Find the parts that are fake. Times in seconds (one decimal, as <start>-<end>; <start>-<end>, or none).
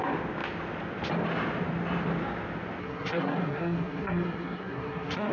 2.8-5.3